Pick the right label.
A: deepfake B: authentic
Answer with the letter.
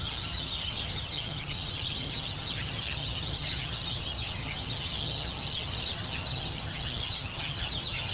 A